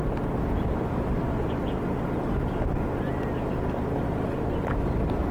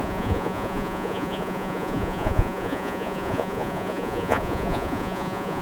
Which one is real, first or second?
first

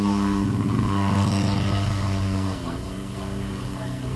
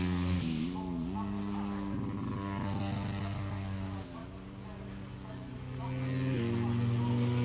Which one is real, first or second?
second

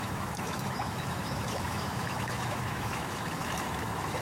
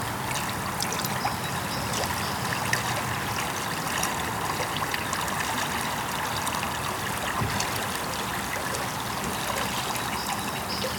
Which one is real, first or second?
second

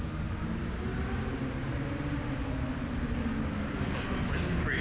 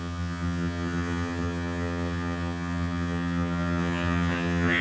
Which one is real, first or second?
first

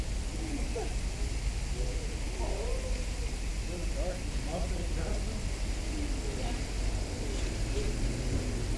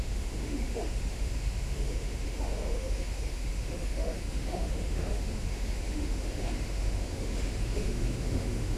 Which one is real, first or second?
first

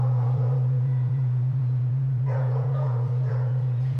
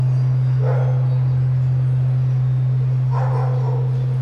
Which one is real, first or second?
second